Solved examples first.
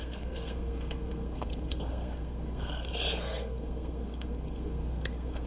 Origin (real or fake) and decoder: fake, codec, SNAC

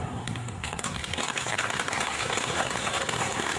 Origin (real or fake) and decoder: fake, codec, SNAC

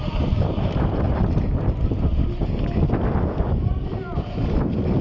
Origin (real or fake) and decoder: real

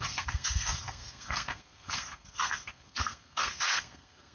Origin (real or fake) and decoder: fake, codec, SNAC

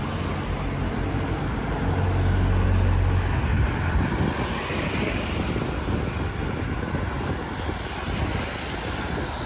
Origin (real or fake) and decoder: real